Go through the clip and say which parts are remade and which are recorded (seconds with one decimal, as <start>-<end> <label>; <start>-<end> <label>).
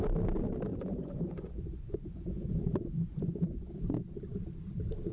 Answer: 0.0-0.7 recorded; 0.7-3.8 remade; 3.8-5.1 recorded